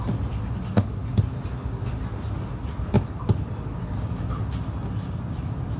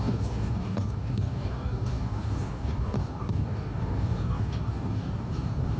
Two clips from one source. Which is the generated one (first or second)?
second